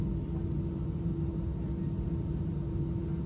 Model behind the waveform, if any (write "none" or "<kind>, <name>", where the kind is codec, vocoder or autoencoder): none